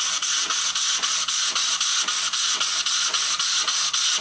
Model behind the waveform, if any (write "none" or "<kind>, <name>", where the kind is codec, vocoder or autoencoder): none